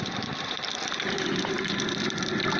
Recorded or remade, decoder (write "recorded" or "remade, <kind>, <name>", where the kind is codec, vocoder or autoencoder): recorded